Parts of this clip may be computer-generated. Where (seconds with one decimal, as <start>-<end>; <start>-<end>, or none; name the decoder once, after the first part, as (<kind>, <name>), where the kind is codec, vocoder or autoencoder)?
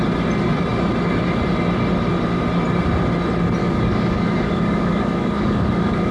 3.6-6.1 (codec, DAC)